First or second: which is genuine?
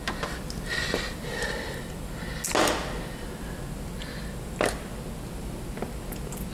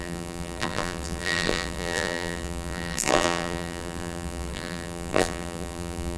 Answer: first